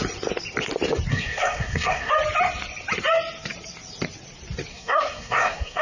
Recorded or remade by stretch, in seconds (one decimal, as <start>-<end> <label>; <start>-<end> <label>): 0.0-1.1 recorded; 1.1-2.1 remade; 2.1-4.7 recorded; 4.7-5.8 remade